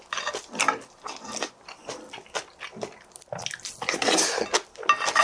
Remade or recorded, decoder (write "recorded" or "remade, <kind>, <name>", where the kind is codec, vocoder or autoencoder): recorded